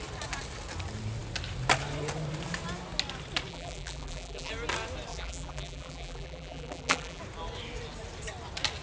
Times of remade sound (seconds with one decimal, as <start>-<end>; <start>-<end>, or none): 3.5-4.5; 5.1-7.2